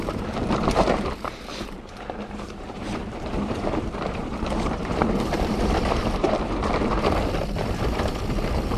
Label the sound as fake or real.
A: fake